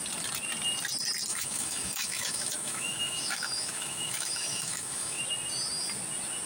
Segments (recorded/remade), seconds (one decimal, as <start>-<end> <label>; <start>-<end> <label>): 0.0-1.3 recorded; 1.3-5.2 remade; 5.2-6.5 recorded